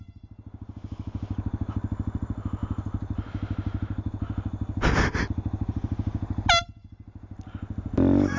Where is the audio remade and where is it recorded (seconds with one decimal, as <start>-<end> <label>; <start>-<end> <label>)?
0.0-8.4 recorded